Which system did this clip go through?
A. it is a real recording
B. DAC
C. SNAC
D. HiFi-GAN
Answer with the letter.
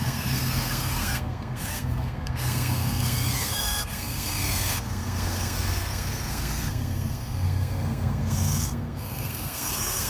C